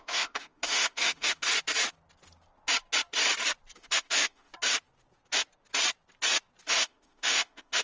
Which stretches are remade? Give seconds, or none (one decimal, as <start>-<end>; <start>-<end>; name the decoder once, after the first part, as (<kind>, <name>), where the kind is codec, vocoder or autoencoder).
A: 0.0-1.5 (autoencoder, DAC-VAE); 3.8-4.5; 6.7-7.8